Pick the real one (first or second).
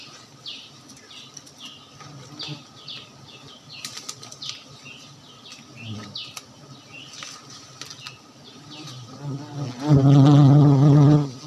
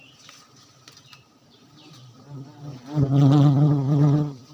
first